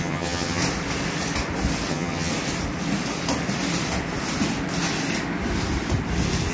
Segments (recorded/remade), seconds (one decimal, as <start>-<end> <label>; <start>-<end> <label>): 0.0-0.6 remade; 0.6-1.9 recorded; 1.9-2.3 remade; 2.3-6.5 recorded